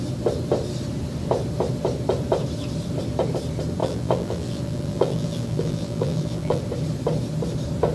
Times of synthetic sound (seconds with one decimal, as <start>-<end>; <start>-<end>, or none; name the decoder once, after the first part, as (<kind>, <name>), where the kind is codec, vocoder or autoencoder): 3.8-6.6 (vocoder, BigVGAN v2)